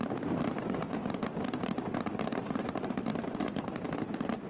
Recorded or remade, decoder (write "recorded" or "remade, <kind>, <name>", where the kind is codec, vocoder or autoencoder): remade, vocoder, BigVGAN v2